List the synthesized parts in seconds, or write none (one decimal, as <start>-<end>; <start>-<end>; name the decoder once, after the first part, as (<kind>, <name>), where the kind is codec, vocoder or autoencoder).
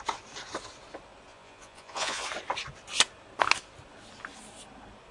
1.3-2.2 (vocoder, Vocos)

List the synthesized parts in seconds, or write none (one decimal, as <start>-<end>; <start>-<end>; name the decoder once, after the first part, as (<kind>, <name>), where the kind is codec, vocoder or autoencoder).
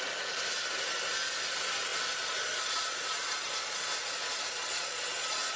1.9-4.0 (vocoder, Vocos); 4.6-5.6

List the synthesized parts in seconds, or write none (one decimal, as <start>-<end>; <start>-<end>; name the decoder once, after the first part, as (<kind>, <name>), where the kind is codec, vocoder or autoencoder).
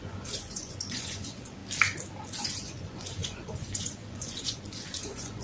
0.0-1.6 (vocoder, Vocos); 2.2-5.4